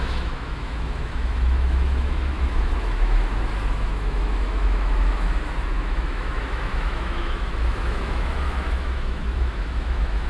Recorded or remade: remade